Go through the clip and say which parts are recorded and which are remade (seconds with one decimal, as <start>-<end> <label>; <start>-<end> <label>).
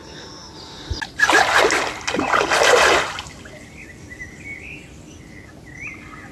0.0-6.3 recorded